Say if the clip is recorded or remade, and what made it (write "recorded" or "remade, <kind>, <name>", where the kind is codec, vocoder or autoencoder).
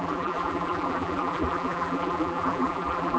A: remade, vocoder, BigVGAN v2